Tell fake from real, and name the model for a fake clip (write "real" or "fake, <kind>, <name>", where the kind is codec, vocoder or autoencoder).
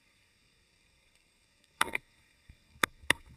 fake, codec, SNAC